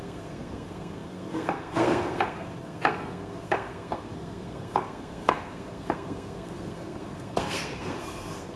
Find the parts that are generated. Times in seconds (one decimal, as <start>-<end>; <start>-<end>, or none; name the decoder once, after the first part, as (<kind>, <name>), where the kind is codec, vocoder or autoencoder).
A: 0.0-8.6 (codec, SNAC)